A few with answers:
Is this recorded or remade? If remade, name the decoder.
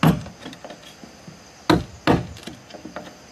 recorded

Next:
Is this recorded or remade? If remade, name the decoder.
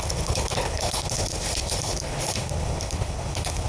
remade, codec, HILCodec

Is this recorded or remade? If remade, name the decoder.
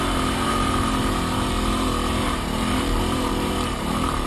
remade, vocoder, BigVGAN v2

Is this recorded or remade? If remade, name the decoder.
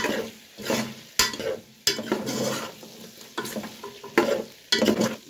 recorded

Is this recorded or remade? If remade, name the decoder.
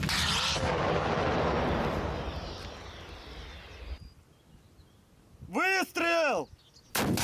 recorded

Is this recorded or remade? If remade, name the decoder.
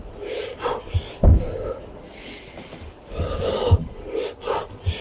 recorded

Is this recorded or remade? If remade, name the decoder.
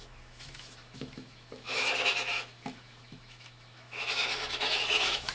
remade, autoencoder, DAC-VAE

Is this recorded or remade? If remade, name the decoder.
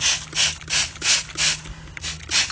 recorded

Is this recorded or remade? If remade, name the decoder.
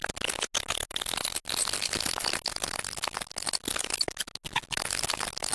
recorded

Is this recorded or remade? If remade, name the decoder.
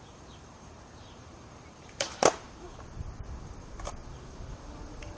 remade, vocoder, BigVGAN v2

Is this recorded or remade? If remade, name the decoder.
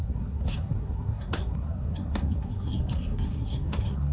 remade, codec, SNAC